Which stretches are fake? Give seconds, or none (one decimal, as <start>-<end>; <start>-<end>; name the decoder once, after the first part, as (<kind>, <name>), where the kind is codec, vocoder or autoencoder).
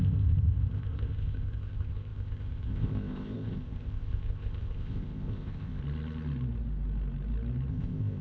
0.0-5.8 (codec, ZipCodec); 7.7-8.2